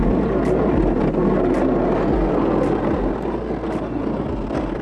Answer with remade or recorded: recorded